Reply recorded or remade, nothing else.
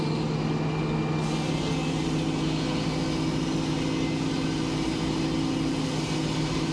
recorded